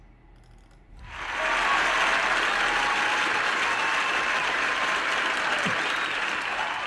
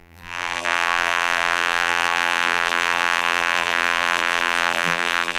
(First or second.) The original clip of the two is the first